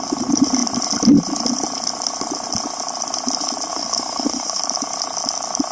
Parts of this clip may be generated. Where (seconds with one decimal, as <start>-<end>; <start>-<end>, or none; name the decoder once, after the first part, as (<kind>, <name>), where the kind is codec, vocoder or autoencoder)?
3.7-4.6 (codec, SNAC)